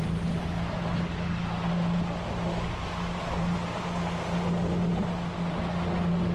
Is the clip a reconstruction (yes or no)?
no